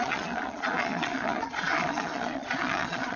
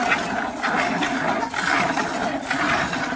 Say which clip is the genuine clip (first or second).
second